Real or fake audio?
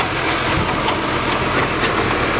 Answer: real